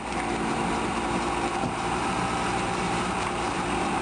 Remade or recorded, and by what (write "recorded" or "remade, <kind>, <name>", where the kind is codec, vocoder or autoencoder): remade, vocoder, BigVGAN v2